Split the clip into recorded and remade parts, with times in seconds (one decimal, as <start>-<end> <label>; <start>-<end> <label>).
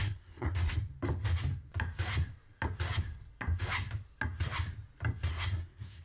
0.0-0.8 remade; 0.8-5.3 recorded; 5.3-6.0 remade